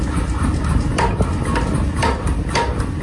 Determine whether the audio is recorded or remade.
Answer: recorded